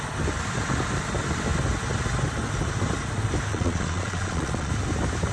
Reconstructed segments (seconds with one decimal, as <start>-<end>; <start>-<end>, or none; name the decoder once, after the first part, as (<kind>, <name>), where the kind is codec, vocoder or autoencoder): 3.5-4.7 (vocoder, Vocos)